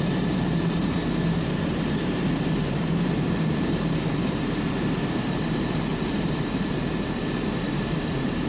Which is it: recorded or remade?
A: remade